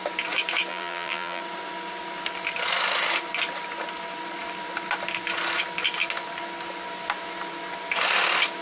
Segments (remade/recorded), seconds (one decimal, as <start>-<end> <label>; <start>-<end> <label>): 0.0-0.7 recorded; 0.7-1.4 remade; 1.4-8.6 recorded